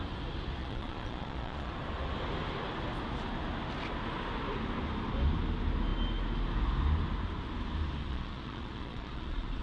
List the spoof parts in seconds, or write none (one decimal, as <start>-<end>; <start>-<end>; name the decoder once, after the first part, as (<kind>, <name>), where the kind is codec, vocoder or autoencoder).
0.6-1.7 (vocoder, Vocos); 8.0-9.6